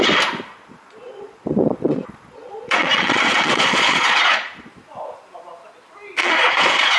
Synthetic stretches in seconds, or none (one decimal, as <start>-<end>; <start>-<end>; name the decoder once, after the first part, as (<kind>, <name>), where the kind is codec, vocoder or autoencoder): 0.5-4.7 (vocoder, Vocos); 6.2-7.0